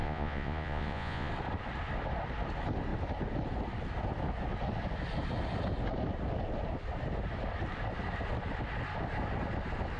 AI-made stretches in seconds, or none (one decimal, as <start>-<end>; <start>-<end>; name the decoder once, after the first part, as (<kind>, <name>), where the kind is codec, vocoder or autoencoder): 0.0-1.3 (vocoder, Vocos)